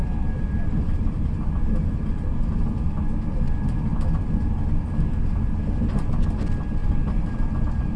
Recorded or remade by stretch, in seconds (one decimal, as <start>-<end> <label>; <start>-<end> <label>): 0.0-1.3 remade; 1.3-6.8 recorded; 6.8-7.4 remade; 7.4-8.0 recorded